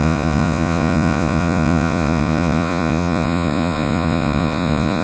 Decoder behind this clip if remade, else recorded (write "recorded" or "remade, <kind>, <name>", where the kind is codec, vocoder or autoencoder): remade, vocoder, Vocos